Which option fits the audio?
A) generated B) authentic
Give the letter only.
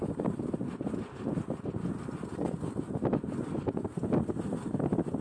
B